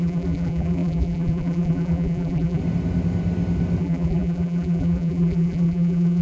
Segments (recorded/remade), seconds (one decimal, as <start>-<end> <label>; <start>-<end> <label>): 0.0-2.6 remade; 2.6-3.8 recorded; 3.8-6.2 remade